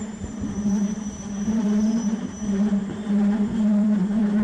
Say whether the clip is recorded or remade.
remade